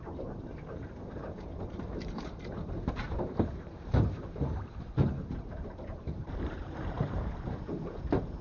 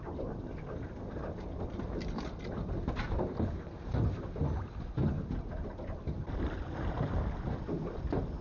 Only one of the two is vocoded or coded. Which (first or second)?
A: first